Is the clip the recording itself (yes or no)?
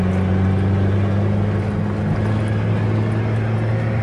yes